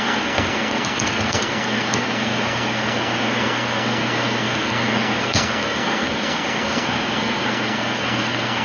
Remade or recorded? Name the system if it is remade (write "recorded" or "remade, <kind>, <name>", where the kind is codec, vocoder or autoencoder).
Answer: remade, codec, SNAC